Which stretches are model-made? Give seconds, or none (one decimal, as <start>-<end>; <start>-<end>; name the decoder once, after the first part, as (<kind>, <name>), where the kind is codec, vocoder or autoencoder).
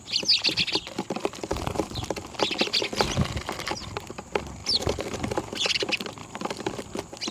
1.2-2.6 (vocoder, BigVGAN v2); 6.2-6.8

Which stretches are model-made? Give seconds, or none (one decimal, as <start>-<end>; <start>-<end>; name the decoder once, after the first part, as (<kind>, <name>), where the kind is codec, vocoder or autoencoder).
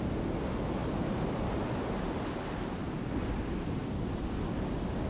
0.8-2.0 (vocoder, BigVGAN v2); 2.8-3.4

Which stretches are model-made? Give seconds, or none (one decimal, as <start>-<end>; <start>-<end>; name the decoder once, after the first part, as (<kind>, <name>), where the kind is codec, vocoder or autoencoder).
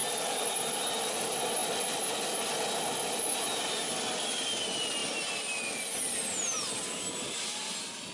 0.0-5.0 (vocoder, BigVGAN v2); 7.4-8.1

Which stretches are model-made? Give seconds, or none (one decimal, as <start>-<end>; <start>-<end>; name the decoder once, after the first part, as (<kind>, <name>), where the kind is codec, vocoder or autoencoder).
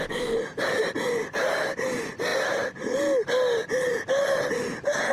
none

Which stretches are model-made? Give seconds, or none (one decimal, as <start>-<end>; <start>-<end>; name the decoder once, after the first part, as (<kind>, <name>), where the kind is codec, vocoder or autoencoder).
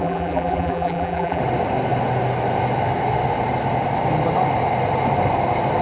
0.0-1.4 (vocoder, BigVGAN v2)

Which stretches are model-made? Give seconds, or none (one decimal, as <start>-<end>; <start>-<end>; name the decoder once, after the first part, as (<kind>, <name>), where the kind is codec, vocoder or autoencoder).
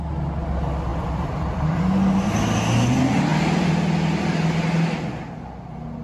0.9-1.8 (vocoder, BigVGAN v2)